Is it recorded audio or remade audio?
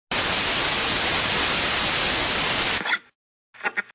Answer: recorded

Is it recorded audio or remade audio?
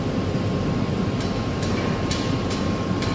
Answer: remade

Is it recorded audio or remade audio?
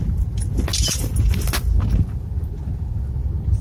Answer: recorded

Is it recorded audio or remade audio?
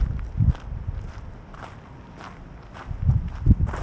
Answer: recorded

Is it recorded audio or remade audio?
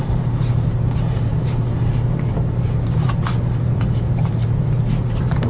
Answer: remade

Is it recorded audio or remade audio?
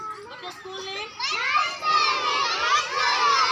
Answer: remade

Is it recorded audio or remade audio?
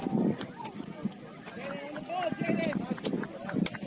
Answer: recorded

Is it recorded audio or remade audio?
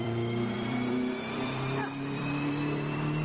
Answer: remade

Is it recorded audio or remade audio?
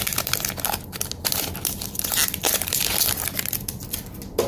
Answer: recorded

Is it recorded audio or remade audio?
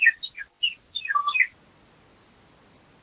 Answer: recorded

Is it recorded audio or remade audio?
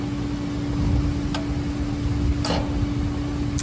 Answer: recorded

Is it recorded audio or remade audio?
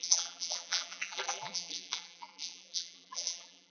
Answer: remade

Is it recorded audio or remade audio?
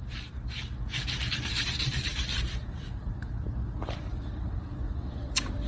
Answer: remade